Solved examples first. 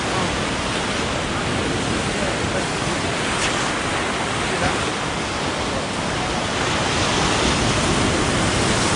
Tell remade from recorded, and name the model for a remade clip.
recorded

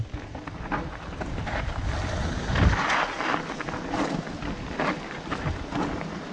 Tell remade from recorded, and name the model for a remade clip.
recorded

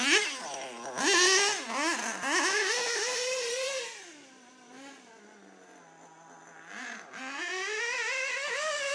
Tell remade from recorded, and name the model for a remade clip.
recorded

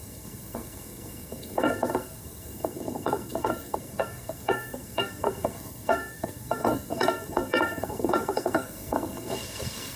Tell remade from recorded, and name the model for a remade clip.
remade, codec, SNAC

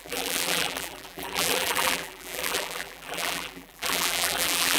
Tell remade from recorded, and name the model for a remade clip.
remade, vocoder, BigVGAN v2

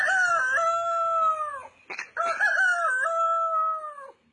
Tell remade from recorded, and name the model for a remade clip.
recorded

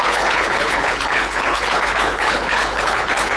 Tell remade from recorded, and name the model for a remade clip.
remade, codec, HILCodec